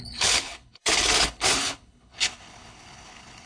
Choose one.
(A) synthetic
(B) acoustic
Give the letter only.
A